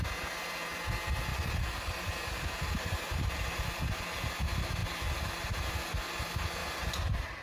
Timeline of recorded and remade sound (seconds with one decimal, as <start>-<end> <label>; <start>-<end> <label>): 0.0-1.3 recorded; 1.3-2.1 remade; 2.1-4.8 recorded; 4.8-5.7 remade; 5.7-6.6 recorded; 6.6-7.4 remade

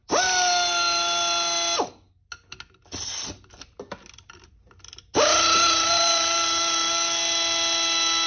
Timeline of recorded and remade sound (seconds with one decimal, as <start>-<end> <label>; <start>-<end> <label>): 0.0-8.3 recorded

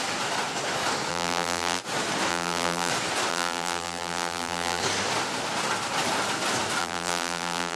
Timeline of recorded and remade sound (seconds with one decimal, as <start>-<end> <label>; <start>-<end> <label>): 0.0-1.1 recorded; 1.1-1.8 remade; 1.8-2.3 recorded; 2.3-2.9 remade; 2.9-3.3 recorded; 3.3-4.8 remade; 4.8-6.8 recorded; 6.8-7.8 remade

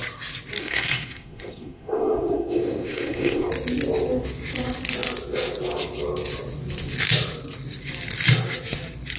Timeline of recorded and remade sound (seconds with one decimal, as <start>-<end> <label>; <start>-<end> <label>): 0.0-0.6 recorded; 0.6-3.5 remade; 3.5-9.2 recorded

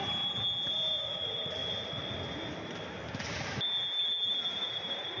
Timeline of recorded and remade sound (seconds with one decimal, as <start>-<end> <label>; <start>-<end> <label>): 0.0-0.7 recorded; 0.7-1.6 remade; 1.6-4.7 recorded; 4.7-5.2 remade

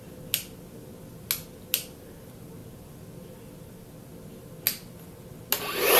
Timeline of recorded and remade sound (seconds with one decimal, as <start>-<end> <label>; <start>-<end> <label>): 0.0-6.0 recorded

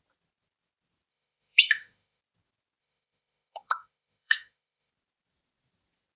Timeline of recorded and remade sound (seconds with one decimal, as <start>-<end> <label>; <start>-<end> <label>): 0.0-1.1 recorded; 1.1-2.2 remade; 2.2-2.8 recorded; 2.8-4.9 remade; 4.9-6.2 recorded

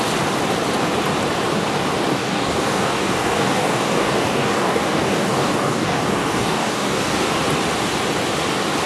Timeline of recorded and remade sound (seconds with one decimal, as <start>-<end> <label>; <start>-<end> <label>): 0.0-2.1 recorded; 2.1-7.3 remade; 7.3-8.9 recorded